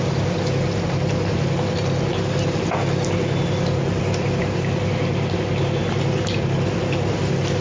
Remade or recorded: recorded